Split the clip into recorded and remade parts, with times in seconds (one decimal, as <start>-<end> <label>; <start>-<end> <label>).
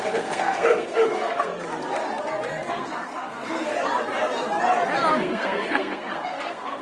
0.0-1.5 remade; 1.5-2.7 recorded; 2.7-3.7 remade; 3.7-5.1 recorded; 5.1-6.8 remade